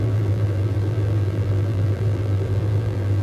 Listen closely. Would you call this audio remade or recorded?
remade